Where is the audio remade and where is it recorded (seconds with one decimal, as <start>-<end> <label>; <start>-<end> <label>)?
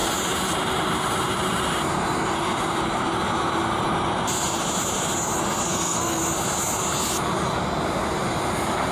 0.0-5.7 recorded; 5.7-6.2 remade; 6.2-8.9 recorded